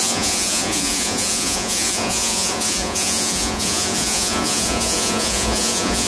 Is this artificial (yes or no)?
yes